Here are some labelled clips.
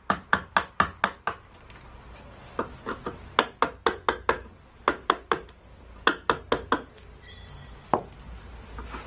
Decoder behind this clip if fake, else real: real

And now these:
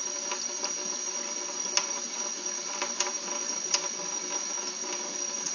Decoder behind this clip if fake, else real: real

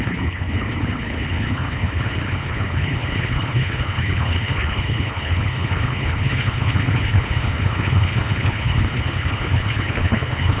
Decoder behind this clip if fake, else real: fake, codec, HILCodec